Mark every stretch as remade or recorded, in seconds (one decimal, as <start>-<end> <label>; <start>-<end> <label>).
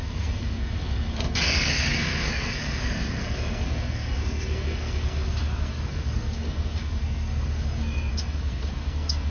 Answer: 0.0-9.3 remade